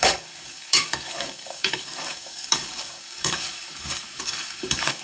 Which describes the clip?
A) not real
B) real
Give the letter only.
A